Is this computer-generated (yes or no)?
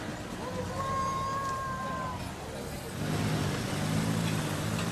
no